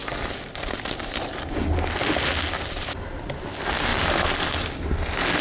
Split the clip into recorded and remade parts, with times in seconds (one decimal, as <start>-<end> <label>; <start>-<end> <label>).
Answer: 0.0-3.9 recorded; 3.9-4.7 remade; 4.7-5.4 recorded